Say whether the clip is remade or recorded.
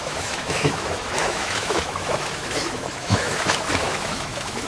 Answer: remade